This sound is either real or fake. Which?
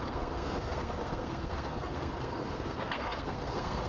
fake